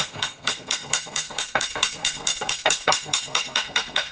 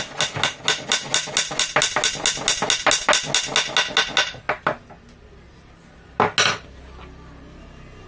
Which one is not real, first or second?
first